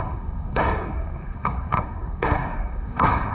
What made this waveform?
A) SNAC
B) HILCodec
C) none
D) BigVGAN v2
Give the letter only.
A